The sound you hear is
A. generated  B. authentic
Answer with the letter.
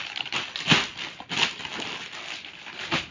B